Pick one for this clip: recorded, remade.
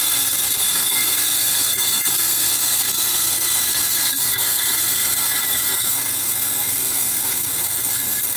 remade